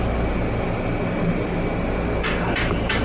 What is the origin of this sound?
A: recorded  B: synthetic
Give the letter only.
A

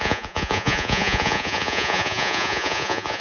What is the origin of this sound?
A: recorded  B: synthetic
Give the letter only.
B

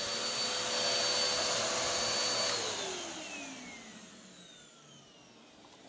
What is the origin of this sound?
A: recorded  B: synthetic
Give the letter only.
A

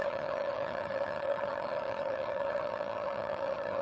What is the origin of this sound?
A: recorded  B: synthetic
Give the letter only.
B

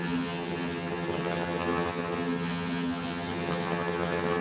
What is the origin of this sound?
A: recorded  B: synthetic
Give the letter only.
B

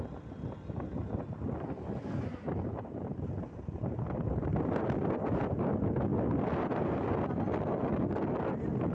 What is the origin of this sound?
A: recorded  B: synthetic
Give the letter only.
A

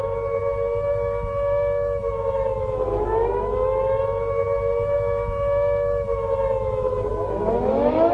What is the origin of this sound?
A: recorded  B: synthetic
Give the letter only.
B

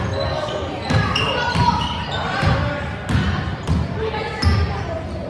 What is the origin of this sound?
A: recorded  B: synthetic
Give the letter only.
A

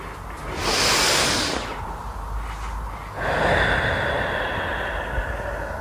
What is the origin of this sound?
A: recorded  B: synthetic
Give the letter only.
A